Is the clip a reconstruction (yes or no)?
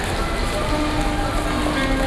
no